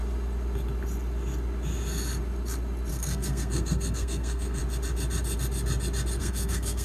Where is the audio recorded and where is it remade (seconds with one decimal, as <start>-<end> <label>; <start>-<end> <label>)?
0.0-2.9 recorded; 2.9-4.6 remade; 4.6-6.2 recorded; 6.2-6.8 remade